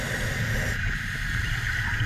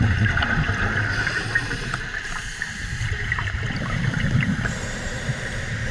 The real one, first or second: first